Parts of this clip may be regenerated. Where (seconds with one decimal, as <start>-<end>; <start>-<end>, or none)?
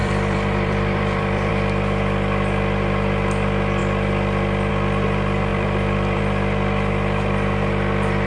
0.0-1.5; 5.5-6.2